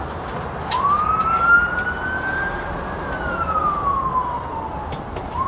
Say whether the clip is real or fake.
real